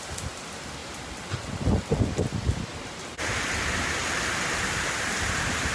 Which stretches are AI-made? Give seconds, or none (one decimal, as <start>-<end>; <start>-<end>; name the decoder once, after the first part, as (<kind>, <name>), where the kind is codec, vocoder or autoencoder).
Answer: none

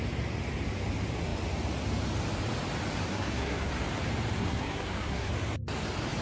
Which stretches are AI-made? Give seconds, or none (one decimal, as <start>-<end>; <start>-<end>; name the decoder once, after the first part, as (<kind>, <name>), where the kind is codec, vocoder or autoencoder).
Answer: 3.1-3.7 (codec, SNAC); 4.4-5.3

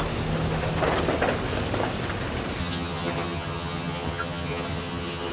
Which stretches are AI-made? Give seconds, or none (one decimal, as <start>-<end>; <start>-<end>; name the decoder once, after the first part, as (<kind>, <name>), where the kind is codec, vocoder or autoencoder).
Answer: 2.6-5.3 (vocoder, HiFi-GAN)

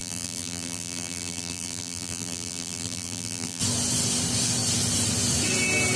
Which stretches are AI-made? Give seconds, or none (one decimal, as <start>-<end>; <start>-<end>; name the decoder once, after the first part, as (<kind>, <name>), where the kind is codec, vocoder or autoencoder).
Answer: 0.0-3.6 (vocoder, BigVGAN v2)

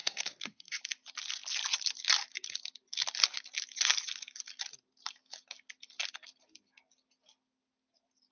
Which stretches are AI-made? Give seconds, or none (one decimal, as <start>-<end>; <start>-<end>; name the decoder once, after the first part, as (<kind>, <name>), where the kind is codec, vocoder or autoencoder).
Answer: 0.0-0.8 (codec, SNAC)

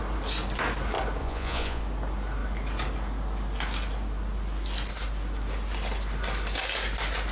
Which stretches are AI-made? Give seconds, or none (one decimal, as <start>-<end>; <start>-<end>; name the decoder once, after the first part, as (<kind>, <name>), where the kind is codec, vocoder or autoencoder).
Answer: 1.2-1.8 (vocoder, Vocos)

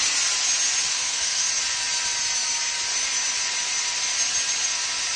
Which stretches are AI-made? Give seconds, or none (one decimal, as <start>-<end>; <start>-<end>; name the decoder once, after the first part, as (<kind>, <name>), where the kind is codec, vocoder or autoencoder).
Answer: 0.9-1.5 (codec, SNAC)

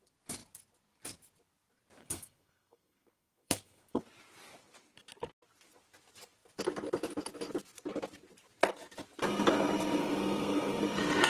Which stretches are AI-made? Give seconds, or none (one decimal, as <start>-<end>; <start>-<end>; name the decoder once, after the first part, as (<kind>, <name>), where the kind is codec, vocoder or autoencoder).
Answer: 2.0-4.0 (codec, SNAC); 10.0-10.8